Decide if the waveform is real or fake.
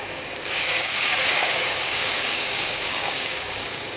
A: fake